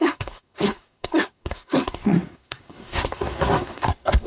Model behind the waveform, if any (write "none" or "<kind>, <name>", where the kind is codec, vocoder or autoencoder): codec, SNAC